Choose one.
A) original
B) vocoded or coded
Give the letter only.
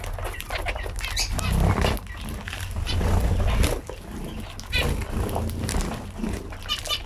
A